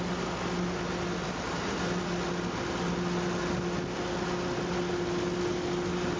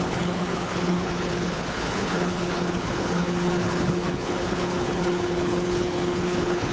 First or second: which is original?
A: first